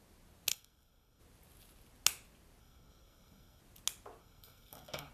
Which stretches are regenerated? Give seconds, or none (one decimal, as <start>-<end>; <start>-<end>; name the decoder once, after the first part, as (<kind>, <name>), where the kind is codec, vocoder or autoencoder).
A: 0.5-1.2 (codec, SNAC); 2.6-3.6; 4.2-5.1